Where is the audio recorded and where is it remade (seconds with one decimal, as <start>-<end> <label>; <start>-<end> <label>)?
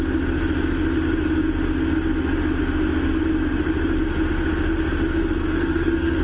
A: 0.0-5.4 recorded; 5.4-6.2 remade